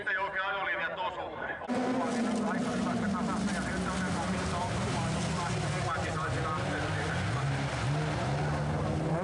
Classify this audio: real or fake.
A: real